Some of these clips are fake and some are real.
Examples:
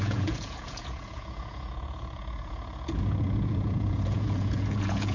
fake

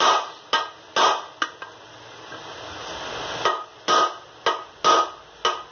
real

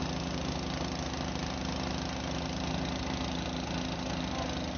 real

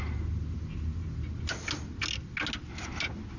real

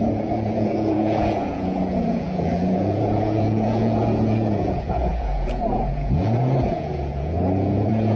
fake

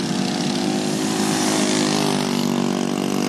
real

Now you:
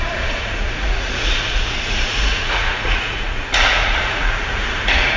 fake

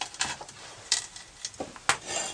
real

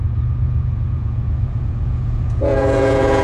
fake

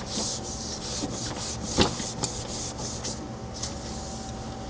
real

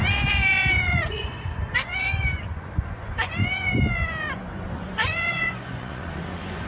fake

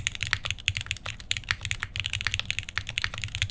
real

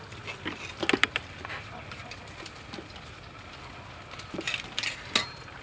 real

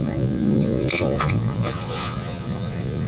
fake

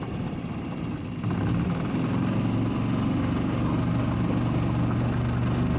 real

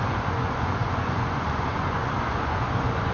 fake